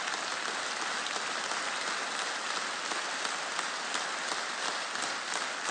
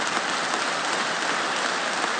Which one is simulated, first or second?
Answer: second